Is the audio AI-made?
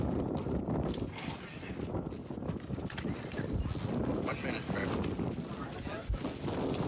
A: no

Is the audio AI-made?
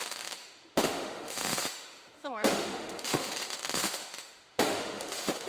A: yes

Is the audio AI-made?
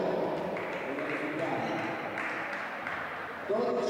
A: no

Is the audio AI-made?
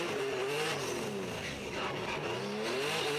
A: no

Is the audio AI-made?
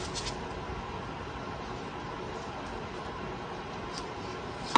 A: no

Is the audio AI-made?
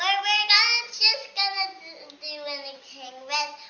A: no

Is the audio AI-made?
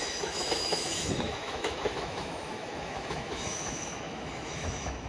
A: yes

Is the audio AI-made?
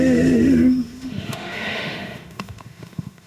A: yes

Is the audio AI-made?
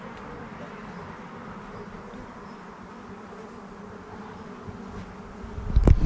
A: no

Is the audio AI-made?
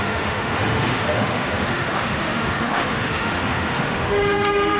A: yes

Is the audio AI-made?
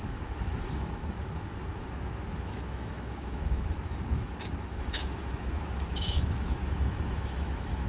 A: yes